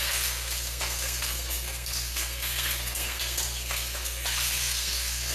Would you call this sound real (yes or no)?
no